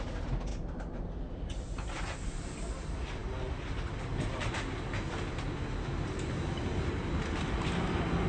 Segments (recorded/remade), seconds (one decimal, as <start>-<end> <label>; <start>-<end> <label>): 0.0-8.3 recorded